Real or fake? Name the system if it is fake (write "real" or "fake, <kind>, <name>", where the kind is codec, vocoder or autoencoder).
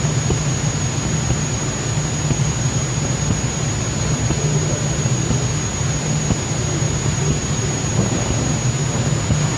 real